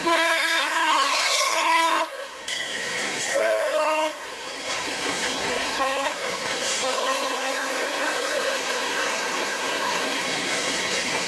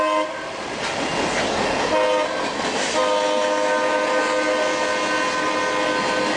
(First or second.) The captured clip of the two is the second